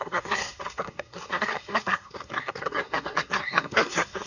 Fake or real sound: fake